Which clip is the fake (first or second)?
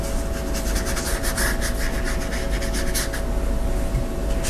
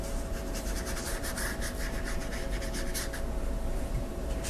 second